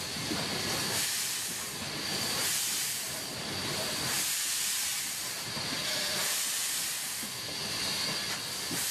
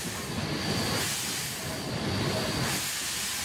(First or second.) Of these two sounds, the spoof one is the first